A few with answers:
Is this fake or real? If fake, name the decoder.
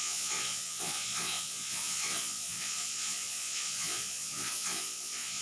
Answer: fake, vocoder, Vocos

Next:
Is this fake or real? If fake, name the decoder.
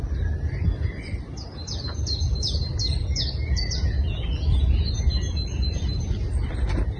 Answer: real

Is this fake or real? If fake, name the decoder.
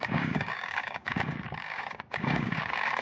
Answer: fake, codec, DAC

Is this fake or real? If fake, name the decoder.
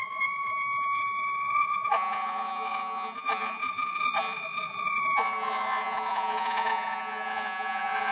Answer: fake, vocoder, Vocos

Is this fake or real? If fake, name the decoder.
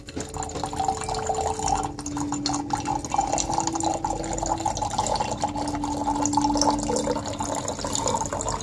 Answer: real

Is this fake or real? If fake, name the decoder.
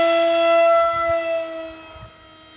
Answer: real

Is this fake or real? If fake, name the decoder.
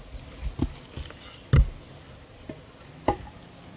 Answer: real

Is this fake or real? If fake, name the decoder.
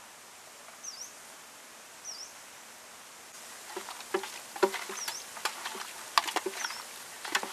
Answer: real